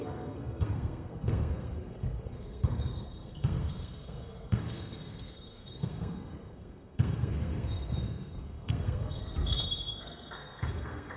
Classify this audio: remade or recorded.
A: remade